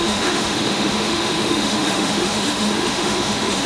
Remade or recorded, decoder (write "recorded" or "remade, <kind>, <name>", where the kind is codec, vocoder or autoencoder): remade, autoencoder, DAC-VAE